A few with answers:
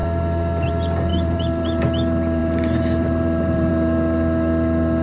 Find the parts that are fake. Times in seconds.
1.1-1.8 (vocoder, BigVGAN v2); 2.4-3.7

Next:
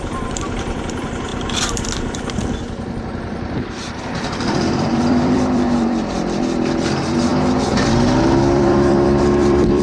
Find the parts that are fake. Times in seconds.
0.0-9.8 (vocoder, BigVGAN v2)